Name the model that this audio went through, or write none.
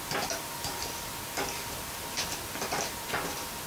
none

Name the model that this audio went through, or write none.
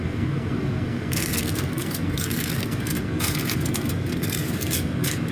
codec, SNAC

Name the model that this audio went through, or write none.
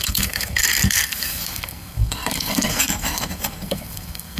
codec, SNAC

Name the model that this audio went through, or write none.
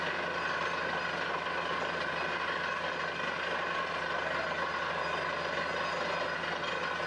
none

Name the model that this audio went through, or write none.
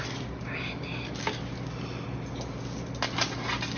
none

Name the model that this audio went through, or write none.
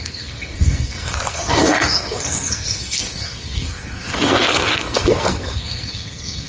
codec, SNAC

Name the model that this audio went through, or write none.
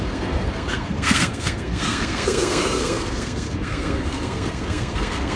codec, SNAC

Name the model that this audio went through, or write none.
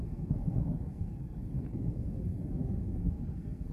codec, SNAC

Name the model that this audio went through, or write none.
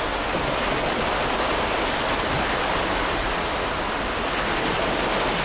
none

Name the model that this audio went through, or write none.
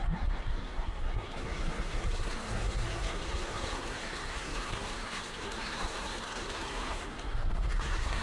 codec, SNAC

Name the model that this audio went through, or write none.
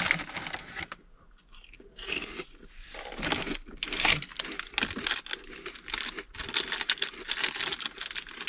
none